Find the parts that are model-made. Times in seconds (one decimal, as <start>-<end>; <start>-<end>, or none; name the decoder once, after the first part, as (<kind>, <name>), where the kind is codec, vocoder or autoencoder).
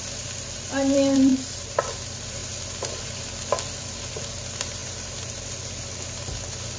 0.0-1.3 (vocoder, BigVGAN v2); 1.8-2.4; 3.0-4.8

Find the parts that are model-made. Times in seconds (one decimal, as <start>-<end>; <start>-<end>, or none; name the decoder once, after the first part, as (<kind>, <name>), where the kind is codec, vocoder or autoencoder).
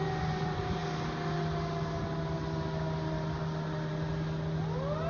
none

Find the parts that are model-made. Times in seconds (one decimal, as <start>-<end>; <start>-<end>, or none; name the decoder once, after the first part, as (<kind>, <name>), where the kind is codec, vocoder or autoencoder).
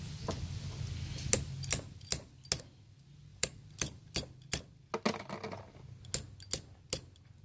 3.3-4.0 (vocoder, BigVGAN v2)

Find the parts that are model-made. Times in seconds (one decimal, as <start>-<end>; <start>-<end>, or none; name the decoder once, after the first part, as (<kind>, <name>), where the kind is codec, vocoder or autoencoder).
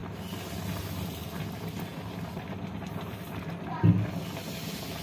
none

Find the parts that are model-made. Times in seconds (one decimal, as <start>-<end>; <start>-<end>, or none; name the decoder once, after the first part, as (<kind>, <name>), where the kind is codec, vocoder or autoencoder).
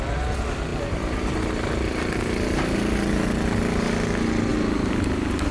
none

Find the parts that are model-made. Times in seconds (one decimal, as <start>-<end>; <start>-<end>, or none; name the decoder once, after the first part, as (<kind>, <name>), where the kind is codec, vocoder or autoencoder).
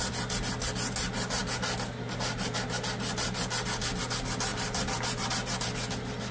4.5-5.3 (vocoder, BigVGAN v2)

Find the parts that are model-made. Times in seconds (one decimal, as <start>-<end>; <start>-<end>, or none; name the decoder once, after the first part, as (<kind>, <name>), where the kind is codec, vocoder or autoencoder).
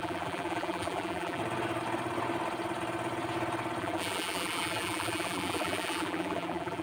0.0-1.4 (vocoder, BigVGAN v2); 3.8-6.8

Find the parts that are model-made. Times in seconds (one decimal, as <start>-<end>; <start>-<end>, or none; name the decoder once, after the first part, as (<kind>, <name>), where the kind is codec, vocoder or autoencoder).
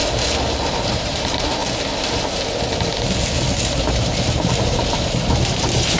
0.7-1.6 (vocoder, BigVGAN v2); 3.6-6.0